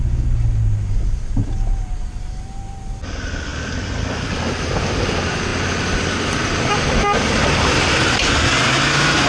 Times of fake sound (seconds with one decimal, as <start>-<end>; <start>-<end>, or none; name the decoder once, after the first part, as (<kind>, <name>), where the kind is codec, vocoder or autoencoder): none